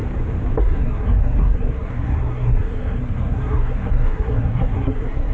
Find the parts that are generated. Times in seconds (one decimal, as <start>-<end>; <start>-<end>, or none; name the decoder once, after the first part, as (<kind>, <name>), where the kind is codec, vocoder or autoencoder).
0.6-5.3 (codec, SNAC)